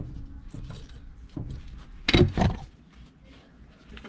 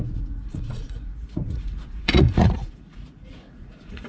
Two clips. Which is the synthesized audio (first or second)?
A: second